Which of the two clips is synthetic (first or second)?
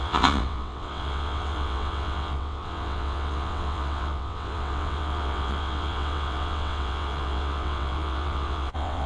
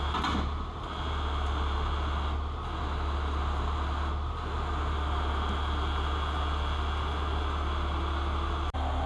first